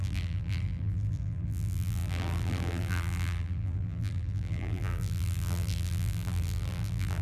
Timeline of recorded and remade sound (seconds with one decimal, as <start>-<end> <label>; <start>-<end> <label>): 0.0-7.2 remade